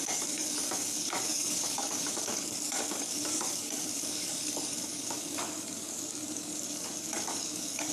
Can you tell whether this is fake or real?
fake